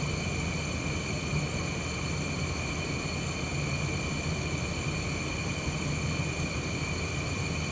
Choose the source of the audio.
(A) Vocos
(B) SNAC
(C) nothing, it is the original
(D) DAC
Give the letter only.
C